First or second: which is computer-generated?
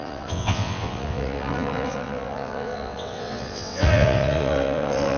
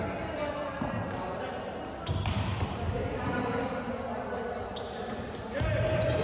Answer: first